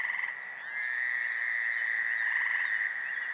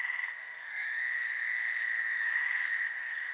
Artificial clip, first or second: second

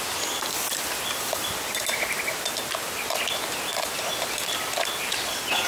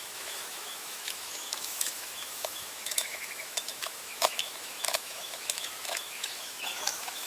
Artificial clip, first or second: second